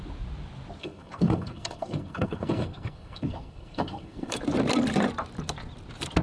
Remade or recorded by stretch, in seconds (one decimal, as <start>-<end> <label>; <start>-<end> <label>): 0.0-0.8 recorded; 0.8-4.4 remade; 4.4-6.2 recorded